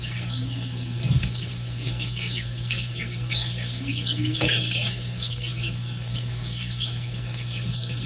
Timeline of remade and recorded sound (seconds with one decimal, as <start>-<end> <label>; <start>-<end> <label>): 0.0-8.1 remade